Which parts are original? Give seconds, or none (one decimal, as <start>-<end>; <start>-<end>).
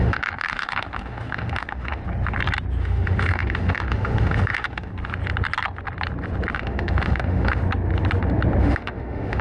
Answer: 2.0-2.8; 4.9-6.5; 7.6-8.6